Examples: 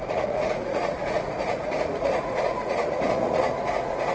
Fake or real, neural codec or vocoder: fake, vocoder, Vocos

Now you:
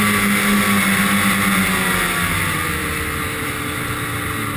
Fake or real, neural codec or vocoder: real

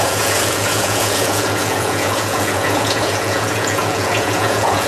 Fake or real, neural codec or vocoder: fake, vocoder, Vocos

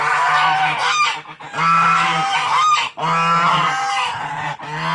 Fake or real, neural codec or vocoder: real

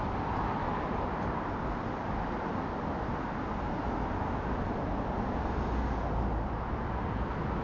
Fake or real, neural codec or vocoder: real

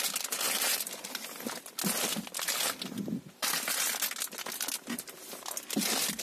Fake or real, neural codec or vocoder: real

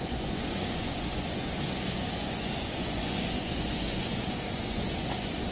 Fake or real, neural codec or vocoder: fake, vocoder, Vocos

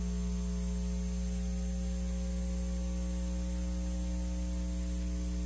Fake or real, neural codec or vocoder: real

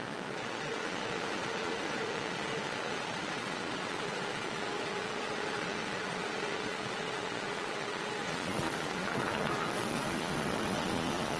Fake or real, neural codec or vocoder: fake, vocoder, Vocos